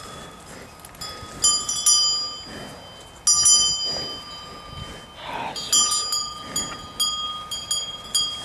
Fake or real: real